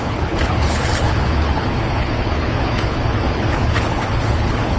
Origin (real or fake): fake